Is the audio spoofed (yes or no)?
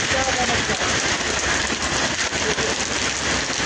no